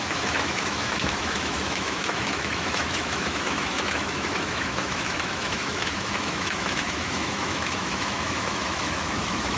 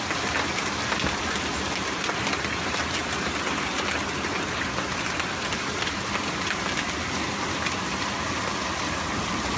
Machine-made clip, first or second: first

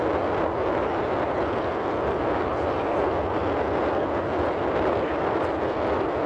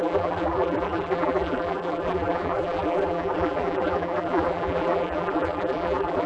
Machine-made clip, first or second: second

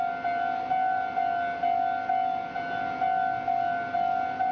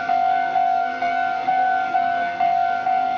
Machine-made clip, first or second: second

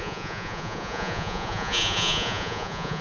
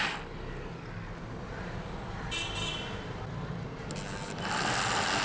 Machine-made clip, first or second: first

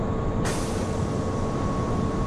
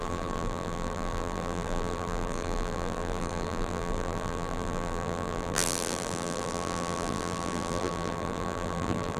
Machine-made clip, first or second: second